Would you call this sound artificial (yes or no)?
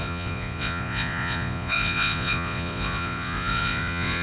yes